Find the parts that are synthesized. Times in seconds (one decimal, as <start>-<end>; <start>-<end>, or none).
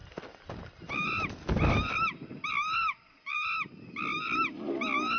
none